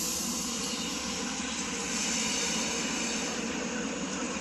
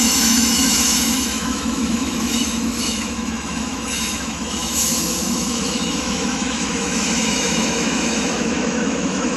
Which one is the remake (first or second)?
second